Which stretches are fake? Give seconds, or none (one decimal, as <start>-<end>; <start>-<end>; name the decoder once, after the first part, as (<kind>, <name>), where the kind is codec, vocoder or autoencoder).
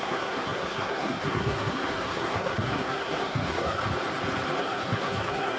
0.0-3.8 (codec, SNAC); 4.6-5.6